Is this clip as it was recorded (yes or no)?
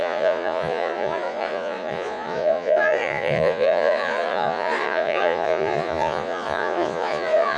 no